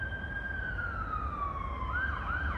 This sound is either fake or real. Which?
real